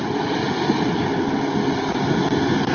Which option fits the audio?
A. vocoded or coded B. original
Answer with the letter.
B